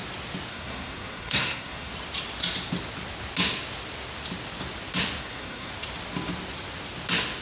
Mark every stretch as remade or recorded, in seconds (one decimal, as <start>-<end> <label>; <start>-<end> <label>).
0.0-0.5 recorded; 0.5-1.9 remade; 1.9-5.2 recorded; 5.2-5.7 remade; 5.7-7.4 recorded